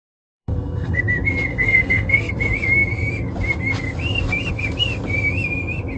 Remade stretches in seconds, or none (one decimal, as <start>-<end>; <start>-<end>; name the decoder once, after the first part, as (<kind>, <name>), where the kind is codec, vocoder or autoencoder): 0.0-1.0 (codec, SNAC); 1.5-2.3